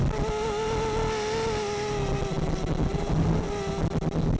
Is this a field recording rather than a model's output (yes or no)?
yes